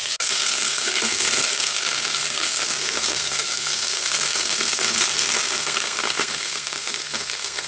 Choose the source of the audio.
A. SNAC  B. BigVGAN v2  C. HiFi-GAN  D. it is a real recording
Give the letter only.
A